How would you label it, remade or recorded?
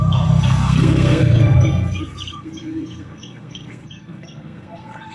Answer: remade